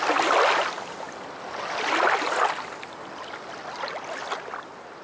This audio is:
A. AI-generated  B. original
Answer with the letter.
B